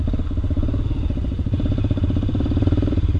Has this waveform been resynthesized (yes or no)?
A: yes